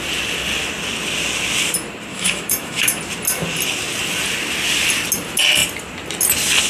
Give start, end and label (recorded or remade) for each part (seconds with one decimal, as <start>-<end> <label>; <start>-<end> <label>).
0.0-2.1 recorded; 2.1-3.0 remade; 3.0-6.7 recorded